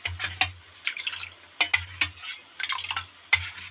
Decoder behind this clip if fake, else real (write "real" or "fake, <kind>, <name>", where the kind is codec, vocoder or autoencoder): real